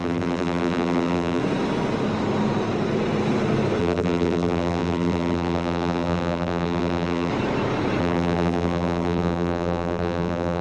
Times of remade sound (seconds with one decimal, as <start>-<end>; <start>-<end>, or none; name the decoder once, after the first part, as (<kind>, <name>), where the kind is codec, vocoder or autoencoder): 0.0-1.4 (vocoder, BigVGAN v2); 3.8-7.3; 8.0-10.6